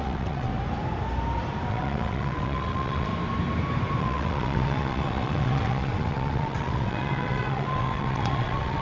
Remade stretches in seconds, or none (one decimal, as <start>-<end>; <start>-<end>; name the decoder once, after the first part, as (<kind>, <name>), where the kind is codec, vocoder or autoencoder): 0.0-0.5 (vocoder, WaveNeXt); 1.7-3.1; 4.0-8.8